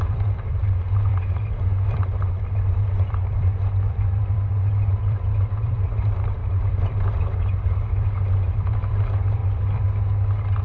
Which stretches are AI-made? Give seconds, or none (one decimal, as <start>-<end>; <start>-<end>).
0.0-9.4